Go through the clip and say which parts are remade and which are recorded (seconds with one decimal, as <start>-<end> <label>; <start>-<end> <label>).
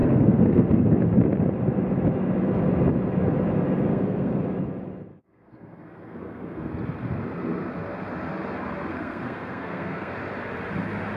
0.0-1.0 remade; 1.0-3.9 recorded; 3.9-4.4 remade; 4.4-5.1 recorded; 5.1-6.7 remade; 6.7-8.9 recorded; 8.9-10.1 remade; 10.1-11.2 recorded